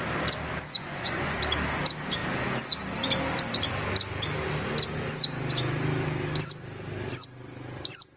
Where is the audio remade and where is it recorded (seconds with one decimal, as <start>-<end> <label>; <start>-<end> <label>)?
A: 0.0-0.7 recorded; 0.7-1.4 remade; 1.4-8.2 recorded